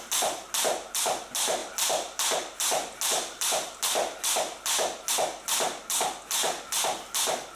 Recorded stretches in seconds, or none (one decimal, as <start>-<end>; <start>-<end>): 0.0-7.6